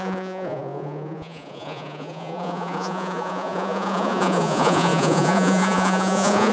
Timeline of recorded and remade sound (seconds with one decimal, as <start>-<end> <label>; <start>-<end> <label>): 0.0-6.5 remade